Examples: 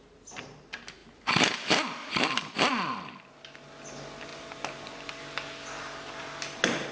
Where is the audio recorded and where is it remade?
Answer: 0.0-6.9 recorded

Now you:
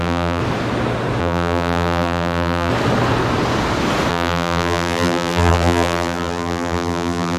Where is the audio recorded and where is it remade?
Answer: 0.0-0.4 remade; 0.4-1.2 recorded; 1.2-2.7 remade; 2.7-4.1 recorded; 4.1-7.4 remade

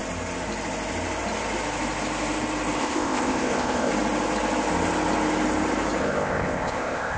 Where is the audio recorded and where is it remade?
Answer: 0.0-2.8 recorded; 2.8-3.9 remade; 3.9-6.0 recorded; 6.0-7.2 remade

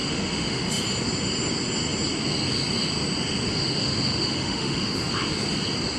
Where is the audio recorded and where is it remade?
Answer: 0.0-0.8 remade; 0.8-3.5 recorded; 3.5-5.1 remade; 5.1-6.0 recorded

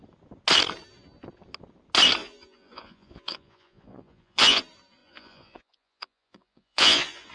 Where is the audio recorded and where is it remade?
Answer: 0.0-2.2 recorded; 2.2-4.6 remade; 4.6-5.0 recorded; 5.0-7.3 remade

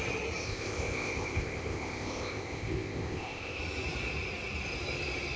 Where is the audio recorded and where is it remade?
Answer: 0.0-0.4 recorded; 0.4-3.6 remade; 3.6-5.4 recorded

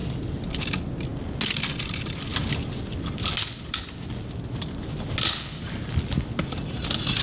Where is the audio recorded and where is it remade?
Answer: 0.0-0.5 remade; 0.5-7.2 recorded